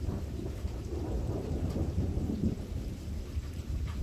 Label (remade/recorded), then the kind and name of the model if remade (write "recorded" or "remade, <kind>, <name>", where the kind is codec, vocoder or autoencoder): remade, vocoder, BigVGAN v2